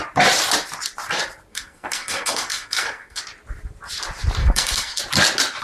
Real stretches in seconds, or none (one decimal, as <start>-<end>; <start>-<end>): 0.0-1.5; 3.2-4.4; 5.0-5.6